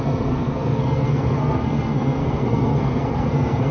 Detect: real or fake fake